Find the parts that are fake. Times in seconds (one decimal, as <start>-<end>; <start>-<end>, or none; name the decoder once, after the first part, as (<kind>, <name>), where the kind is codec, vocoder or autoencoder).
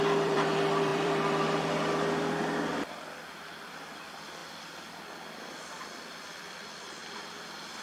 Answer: 0.0-7.0 (vocoder, BigVGAN v2)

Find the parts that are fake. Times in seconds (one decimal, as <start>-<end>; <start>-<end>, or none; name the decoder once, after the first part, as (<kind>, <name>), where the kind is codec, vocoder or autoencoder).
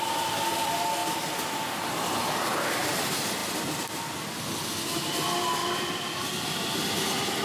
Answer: 1.0-1.5 (vocoder, BigVGAN v2); 3.4-4.1; 5.6-6.2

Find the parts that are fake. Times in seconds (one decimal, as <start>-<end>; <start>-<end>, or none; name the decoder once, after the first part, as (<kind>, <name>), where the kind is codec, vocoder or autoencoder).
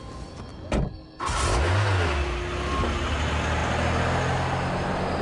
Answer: none